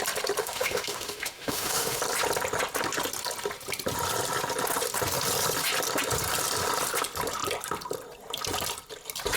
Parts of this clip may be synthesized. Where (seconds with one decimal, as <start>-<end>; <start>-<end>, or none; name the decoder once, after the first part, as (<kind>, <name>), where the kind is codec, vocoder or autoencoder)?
0.4-2.0 (autoencoder, DAC-VAE)